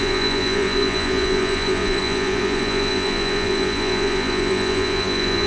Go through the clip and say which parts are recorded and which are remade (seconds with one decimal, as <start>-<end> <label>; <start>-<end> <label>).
0.0-5.5 remade